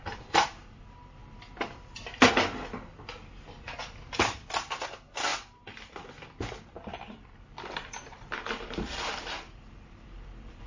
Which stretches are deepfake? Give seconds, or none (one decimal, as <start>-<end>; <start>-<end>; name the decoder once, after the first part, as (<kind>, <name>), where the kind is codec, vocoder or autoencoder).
1.2-2.3 (vocoder, BigVGAN v2); 5.3-10.7